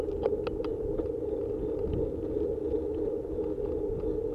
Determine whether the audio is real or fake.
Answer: real